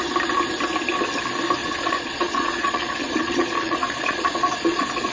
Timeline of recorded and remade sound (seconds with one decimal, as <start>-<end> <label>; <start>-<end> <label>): 0.0-1.6 recorded; 1.6-5.1 remade